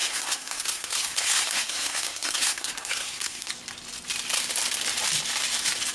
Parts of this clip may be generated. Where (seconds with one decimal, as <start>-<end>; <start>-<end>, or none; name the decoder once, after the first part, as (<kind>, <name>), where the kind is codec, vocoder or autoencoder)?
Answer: 0.0-3.5 (codec, SNAC)